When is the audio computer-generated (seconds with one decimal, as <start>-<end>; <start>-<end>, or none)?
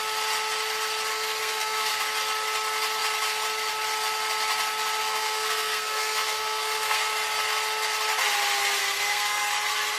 1.1-1.9; 5.0-7.1; 8.8-9.5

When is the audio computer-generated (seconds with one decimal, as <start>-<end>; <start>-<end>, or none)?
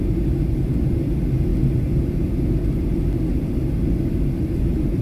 none